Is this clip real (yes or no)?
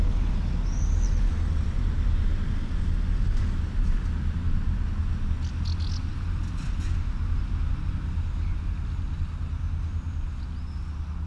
yes